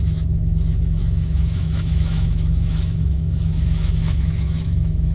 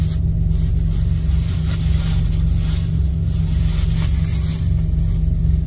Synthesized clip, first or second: first